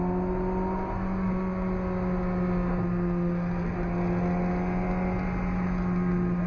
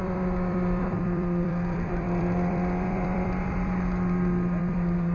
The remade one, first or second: second